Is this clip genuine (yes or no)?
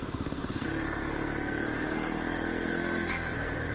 no